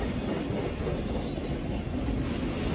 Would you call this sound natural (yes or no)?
yes